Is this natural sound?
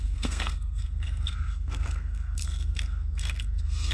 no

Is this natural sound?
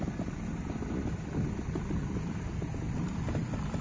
yes